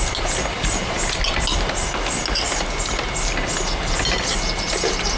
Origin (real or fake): real